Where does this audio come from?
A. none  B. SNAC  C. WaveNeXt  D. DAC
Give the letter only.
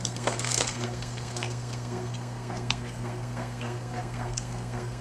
B